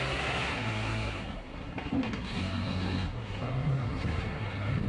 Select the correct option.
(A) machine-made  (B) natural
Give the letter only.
A